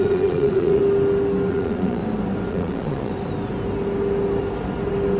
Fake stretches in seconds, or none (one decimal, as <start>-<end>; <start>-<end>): 0.0-0.8; 1.5-2.0; 2.5-3.1